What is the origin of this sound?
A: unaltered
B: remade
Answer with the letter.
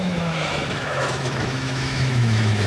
B